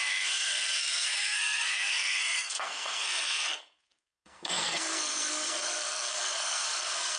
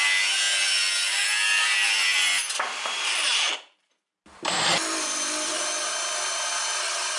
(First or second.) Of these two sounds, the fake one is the first